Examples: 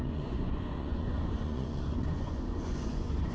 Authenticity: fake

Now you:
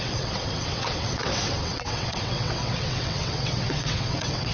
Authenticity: fake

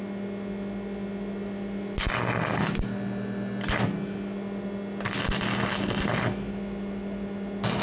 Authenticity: real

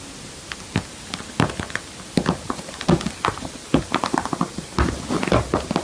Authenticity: real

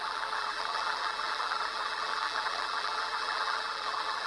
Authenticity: fake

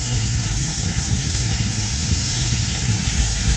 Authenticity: fake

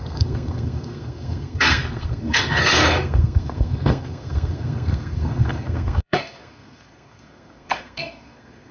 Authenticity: fake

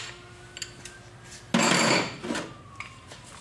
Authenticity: real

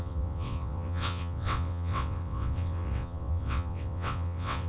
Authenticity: fake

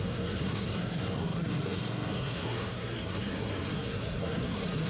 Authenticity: fake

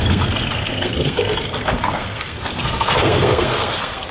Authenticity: fake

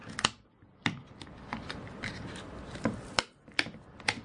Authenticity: real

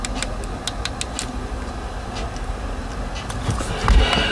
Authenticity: real